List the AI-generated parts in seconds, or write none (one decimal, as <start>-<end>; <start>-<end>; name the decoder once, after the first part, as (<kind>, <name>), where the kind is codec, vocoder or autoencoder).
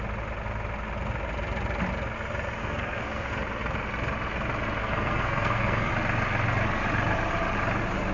2.6-3.3 (codec, SNAC); 4.8-5.9